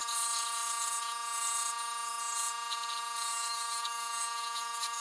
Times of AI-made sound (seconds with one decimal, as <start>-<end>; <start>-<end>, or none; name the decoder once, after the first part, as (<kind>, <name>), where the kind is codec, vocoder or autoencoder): 3.3-5.0 (autoencoder, DAC-VAE)